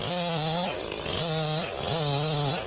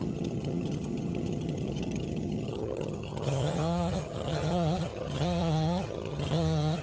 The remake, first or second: second